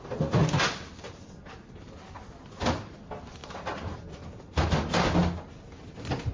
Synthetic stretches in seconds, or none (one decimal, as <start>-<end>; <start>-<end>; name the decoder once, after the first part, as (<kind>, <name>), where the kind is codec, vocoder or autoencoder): none